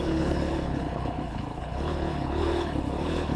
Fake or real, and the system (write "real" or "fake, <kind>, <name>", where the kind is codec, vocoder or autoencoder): fake, codec, HILCodec